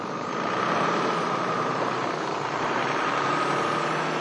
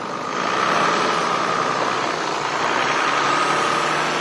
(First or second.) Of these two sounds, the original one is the second